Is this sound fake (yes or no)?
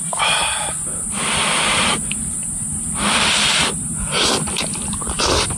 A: no